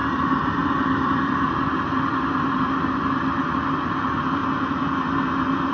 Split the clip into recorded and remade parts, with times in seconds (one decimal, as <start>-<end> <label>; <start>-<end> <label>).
0.0-4.4 remade; 4.4-5.7 recorded